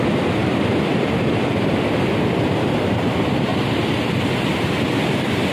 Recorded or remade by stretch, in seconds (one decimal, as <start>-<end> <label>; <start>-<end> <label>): 0.0-0.4 recorded; 0.4-1.5 remade; 1.5-3.5 recorded; 3.5-4.8 remade; 4.8-5.5 recorded